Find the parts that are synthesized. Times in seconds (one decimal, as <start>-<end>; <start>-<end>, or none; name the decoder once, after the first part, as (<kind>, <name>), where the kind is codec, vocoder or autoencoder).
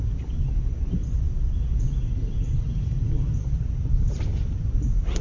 1.0-2.5 (vocoder, BigVGAN v2)